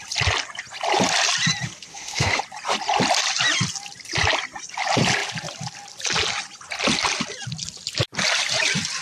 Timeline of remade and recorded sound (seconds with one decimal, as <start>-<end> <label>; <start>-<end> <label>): 0.0-1.9 recorded; 1.9-2.4 remade; 2.4-9.0 recorded

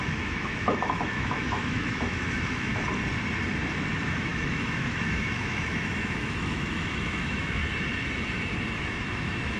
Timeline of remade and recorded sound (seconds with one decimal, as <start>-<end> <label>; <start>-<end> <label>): 0.0-2.7 remade; 2.7-3.9 recorded; 3.9-7.6 remade; 7.6-8.8 recorded; 8.8-9.6 remade

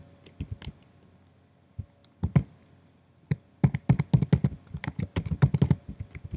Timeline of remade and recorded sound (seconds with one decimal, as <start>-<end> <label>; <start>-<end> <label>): 0.0-6.4 recorded

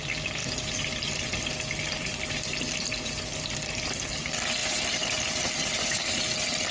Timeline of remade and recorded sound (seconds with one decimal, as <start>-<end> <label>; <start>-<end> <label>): 0.0-6.7 recorded